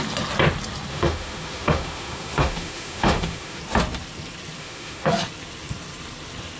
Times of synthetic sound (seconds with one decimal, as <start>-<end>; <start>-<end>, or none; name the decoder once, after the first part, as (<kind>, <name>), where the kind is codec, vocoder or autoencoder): 0.9-3.6 (autoencoder, DAC-VAE); 4.6-5.1